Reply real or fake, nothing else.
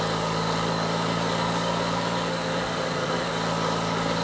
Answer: fake